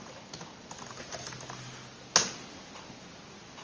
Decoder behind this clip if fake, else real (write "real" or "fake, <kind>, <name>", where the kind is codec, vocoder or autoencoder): real